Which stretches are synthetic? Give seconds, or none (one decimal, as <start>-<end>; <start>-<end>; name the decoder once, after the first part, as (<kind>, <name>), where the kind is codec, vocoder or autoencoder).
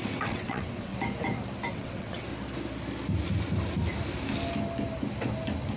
0.0-0.9 (vocoder, WaveNeXt); 1.7-2.3